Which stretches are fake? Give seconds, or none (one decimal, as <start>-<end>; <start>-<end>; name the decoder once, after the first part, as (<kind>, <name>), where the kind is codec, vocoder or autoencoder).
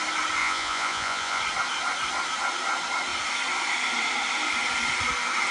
0.4-1.4 (vocoder, Vocos)